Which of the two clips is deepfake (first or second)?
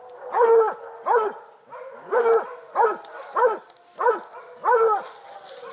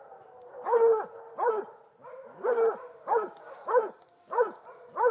second